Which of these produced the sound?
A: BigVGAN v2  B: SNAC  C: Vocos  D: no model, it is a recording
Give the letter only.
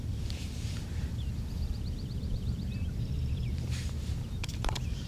A